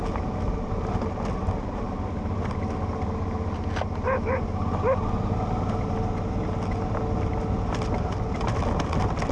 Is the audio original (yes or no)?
yes